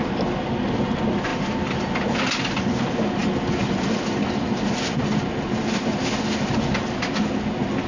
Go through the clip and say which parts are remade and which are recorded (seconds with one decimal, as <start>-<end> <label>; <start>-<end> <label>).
0.0-7.9 recorded